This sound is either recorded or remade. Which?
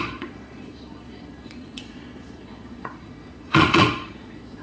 remade